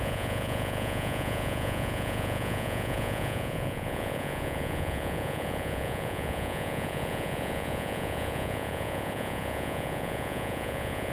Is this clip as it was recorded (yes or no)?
no